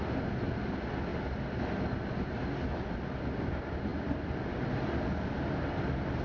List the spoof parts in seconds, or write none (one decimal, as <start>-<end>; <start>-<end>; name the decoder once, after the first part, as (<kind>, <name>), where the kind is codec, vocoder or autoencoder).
3.9-4.4 (vocoder, BigVGAN v2)